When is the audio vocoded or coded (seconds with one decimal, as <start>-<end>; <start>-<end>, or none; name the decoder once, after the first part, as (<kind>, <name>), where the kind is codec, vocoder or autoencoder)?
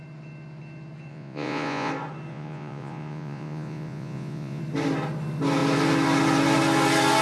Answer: 1.1-1.9 (vocoder, Vocos); 2.3-4.6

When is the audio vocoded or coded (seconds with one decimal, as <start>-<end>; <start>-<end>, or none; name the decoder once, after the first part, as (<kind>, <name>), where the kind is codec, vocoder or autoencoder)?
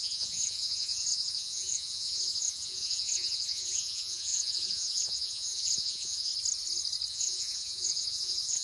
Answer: 0.0-6.3 (vocoder, Vocos); 7.1-8.6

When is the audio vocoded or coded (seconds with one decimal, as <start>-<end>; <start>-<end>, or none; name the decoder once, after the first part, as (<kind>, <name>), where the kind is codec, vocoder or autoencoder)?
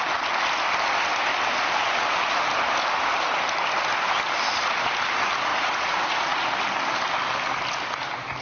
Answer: 5.5-6.4 (vocoder, Vocos)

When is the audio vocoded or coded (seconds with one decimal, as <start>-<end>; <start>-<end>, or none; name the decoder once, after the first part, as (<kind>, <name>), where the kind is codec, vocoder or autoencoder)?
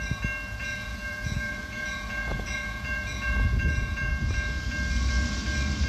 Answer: 0.6-4.1 (vocoder, Vocos)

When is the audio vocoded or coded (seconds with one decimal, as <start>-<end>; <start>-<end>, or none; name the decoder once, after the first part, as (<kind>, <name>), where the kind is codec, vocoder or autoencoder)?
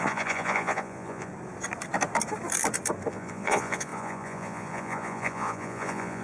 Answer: 0.0-1.3 (vocoder, Vocos); 3.1-6.2